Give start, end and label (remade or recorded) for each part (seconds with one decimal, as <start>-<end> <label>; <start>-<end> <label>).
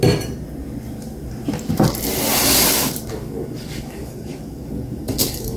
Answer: 0.0-3.1 recorded; 3.1-5.6 remade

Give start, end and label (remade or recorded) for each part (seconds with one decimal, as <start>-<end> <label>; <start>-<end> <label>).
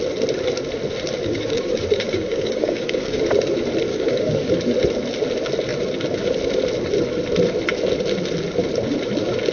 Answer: 0.0-1.2 recorded; 1.2-3.2 remade; 3.2-3.9 recorded; 3.9-4.5 remade; 4.5-9.5 recorded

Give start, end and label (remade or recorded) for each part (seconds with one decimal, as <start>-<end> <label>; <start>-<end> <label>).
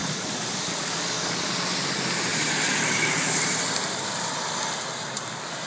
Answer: 0.0-1.5 remade; 1.5-5.7 recorded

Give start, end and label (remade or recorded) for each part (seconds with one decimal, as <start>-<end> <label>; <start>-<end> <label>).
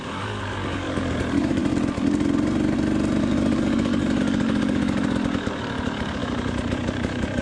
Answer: 0.0-1.6 remade; 1.6-3.2 recorded; 3.2-7.4 remade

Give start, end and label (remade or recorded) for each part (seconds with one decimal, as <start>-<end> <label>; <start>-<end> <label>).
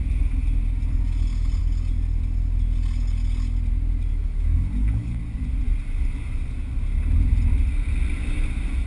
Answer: 0.0-4.1 recorded; 4.1-5.2 remade; 5.2-8.9 recorded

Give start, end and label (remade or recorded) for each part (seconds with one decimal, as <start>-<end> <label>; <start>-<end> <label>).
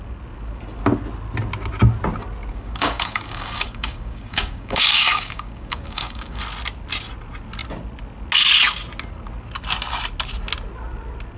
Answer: 0.0-2.5 recorded; 2.5-6.4 remade; 6.4-11.4 recorded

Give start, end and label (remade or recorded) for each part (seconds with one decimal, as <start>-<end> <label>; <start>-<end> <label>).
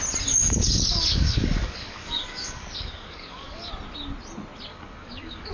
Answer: 0.0-0.4 recorded; 0.4-3.7 remade; 3.7-4.7 recorded; 4.7-5.5 remade